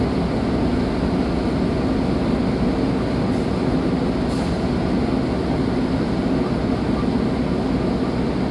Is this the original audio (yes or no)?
yes